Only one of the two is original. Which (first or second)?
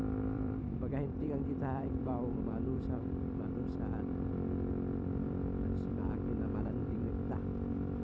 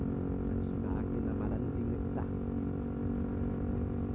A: second